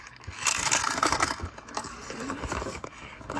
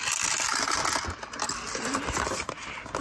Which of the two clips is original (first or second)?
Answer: second